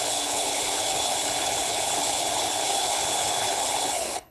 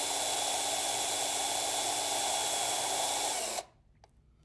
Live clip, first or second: second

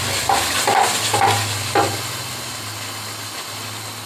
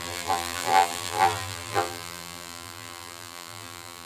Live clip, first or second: first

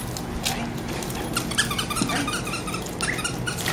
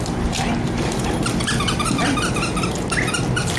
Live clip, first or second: first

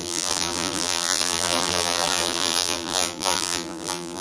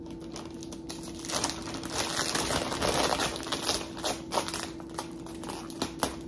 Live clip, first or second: second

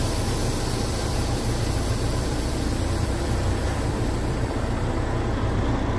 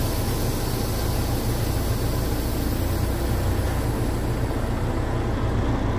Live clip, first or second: second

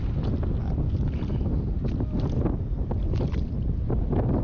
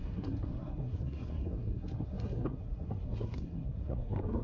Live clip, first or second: first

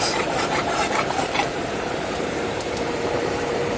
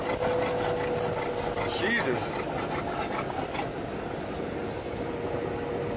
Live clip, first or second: second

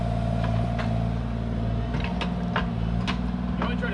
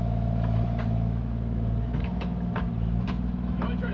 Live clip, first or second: first